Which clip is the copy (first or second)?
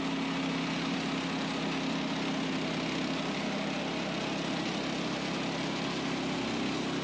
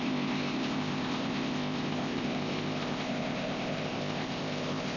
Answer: second